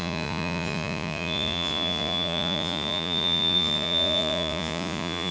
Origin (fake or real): fake